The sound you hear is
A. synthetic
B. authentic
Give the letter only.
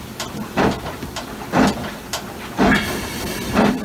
B